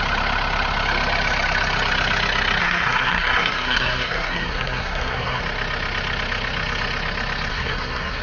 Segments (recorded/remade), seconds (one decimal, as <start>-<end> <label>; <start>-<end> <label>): 0.0-2.6 recorded; 2.6-5.4 remade; 5.4-7.5 recorded; 7.5-8.2 remade